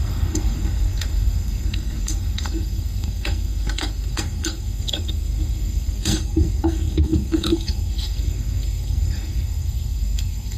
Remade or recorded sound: remade